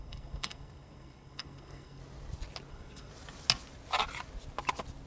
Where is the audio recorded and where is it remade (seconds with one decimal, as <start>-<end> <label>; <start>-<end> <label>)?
0.0-2.0 remade; 2.0-2.7 recorded; 2.7-3.1 remade; 3.1-5.1 recorded